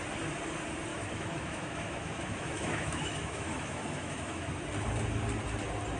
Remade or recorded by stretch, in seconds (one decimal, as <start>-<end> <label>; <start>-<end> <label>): 0.0-0.9 recorded; 0.9-4.5 remade; 4.5-6.0 recorded